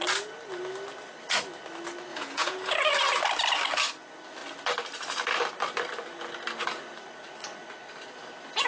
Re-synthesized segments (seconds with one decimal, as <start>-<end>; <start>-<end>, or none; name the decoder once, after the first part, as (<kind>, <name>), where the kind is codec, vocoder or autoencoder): 2.1-2.9 (vocoder, Vocos)